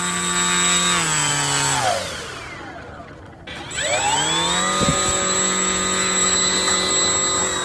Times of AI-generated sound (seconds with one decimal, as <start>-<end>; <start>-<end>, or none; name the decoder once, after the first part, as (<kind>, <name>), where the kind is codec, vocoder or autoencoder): 4.9-6.9 (vocoder, Vocos)